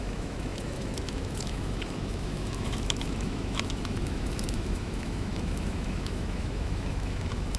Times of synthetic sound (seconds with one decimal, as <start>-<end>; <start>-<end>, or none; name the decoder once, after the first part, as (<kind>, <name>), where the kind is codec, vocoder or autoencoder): 0.0-7.6 (autoencoder, DAC-VAE)